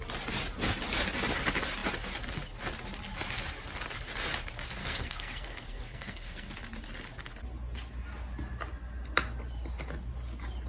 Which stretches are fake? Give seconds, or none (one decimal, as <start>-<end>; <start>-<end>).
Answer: 4.8-6.5